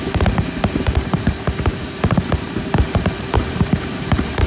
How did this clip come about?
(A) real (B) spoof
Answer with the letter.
B